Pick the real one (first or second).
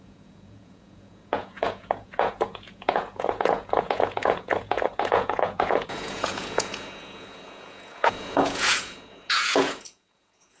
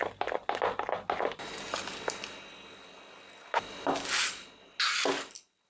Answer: second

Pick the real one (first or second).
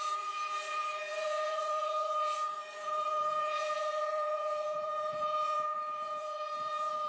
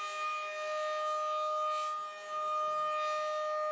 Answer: second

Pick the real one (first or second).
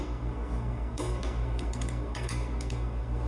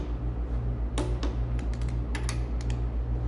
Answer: second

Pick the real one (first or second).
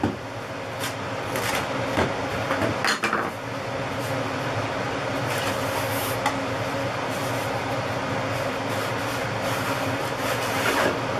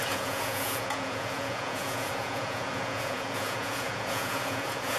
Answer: first